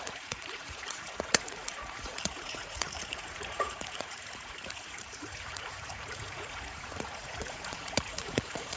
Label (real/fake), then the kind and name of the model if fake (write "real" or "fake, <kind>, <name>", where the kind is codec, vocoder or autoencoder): fake, vocoder, Vocos